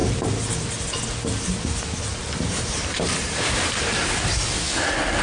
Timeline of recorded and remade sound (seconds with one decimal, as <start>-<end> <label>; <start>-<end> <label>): 0.0-2.1 recorded; 2.1-4.2 remade; 4.2-5.2 recorded

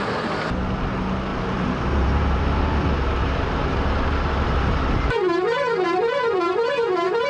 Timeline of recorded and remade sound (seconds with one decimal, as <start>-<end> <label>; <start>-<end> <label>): 0.0-1.3 recorded; 1.3-2.4 remade; 2.4-3.2 recorded; 3.2-7.3 remade

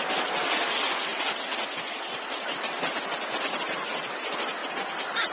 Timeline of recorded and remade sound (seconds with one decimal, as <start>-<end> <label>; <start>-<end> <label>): 0.0-5.3 recorded